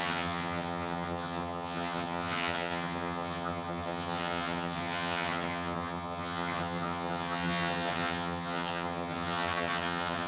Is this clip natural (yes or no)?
no